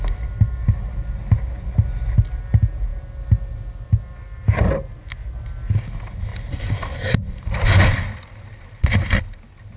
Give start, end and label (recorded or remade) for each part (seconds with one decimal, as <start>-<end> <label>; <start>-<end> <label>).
0.0-6.3 recorded; 6.3-9.2 remade; 9.2-9.8 recorded